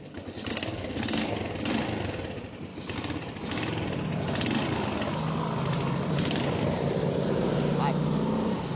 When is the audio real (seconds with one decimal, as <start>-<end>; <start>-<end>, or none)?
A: 0.0-0.5; 1.4-8.8